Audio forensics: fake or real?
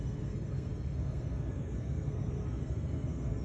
fake